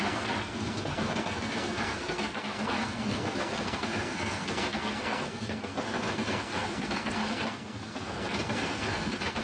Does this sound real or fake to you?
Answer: fake